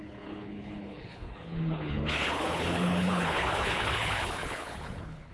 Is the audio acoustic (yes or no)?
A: no